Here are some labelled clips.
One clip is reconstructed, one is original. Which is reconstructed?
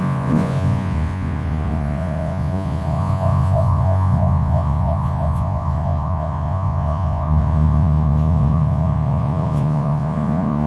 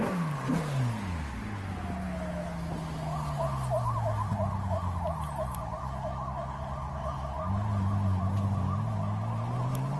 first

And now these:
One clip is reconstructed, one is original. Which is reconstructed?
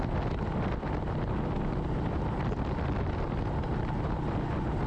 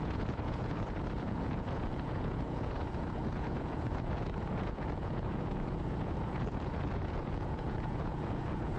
second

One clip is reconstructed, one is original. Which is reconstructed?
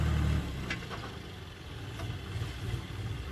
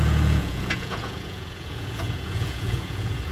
second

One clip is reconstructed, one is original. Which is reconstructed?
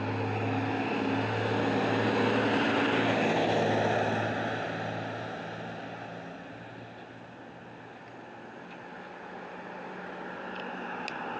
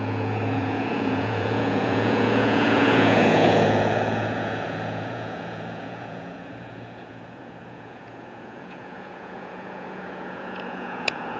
second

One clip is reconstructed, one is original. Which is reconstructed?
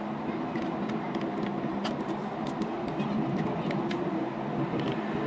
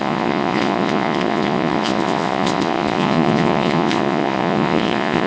second